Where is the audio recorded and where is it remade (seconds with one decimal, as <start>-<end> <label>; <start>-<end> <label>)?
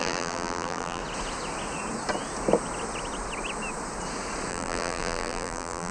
0.0-1.0 remade; 1.0-4.5 recorded; 4.5-5.9 remade